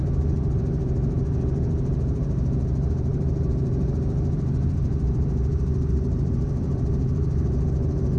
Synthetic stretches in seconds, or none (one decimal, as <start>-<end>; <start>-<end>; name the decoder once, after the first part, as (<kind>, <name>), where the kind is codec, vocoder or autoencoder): 0.0-8.2 (vocoder, BigVGAN v2)